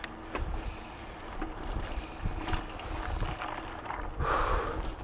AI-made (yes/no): no